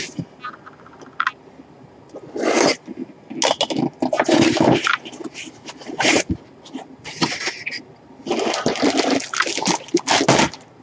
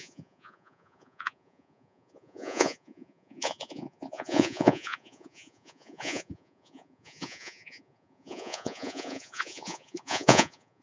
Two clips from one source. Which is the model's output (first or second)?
second